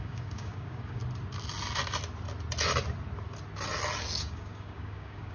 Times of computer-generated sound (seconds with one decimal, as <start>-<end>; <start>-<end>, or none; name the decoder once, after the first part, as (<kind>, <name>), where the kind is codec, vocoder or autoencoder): 0.0-1.0 (codec, DAC); 4.2-5.3